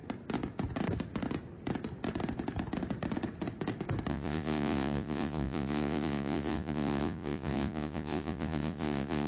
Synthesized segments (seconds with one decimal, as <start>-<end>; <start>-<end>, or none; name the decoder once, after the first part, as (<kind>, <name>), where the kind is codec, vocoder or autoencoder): 4.1-9.3 (vocoder, Vocos)